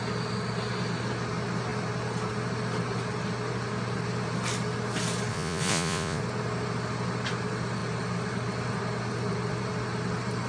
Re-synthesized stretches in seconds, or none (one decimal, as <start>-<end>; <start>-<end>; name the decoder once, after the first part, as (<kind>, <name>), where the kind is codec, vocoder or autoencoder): 5.3-6.2 (vocoder, Vocos)